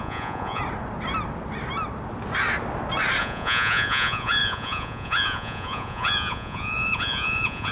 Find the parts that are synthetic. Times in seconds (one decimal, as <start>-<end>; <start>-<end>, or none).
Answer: 0.0-0.6; 3.2-7.7